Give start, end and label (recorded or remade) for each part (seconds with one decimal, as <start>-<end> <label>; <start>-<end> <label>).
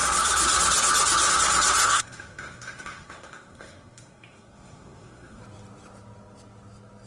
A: 0.0-1.8 recorded; 1.8-5.4 remade; 5.4-7.1 recorded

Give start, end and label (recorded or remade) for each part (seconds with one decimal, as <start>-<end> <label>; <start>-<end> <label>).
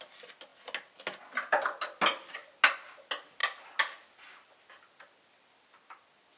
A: 0.0-6.4 recorded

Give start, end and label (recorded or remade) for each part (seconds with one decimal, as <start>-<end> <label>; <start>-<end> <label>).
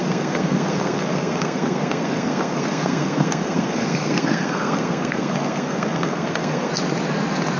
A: 0.0-6.7 remade; 6.7-7.6 recorded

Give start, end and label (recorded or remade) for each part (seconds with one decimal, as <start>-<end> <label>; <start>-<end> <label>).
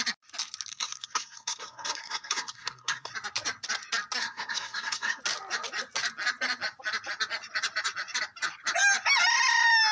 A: 0.0-0.7 recorded; 0.7-3.1 remade; 3.1-4.2 recorded; 4.2-5.2 remade; 5.2-9.9 recorded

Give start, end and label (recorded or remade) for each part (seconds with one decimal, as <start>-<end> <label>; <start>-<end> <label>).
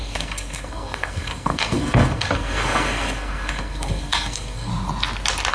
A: 0.0-4.7 remade; 4.7-5.5 recorded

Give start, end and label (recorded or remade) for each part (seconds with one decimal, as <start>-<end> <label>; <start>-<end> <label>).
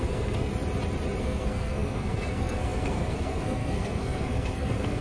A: 0.0-0.5 remade; 0.5-1.2 recorded; 1.2-5.0 remade